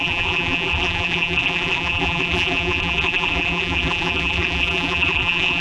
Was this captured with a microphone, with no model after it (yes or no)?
no